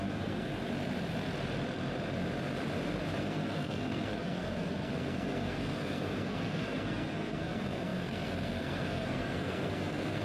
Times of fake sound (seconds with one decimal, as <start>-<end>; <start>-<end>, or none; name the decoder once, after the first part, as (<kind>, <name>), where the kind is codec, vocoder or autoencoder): 0.0-0.5 (codec, SNAC); 3.2-10.2